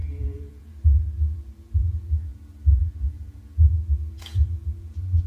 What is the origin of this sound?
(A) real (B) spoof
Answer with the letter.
B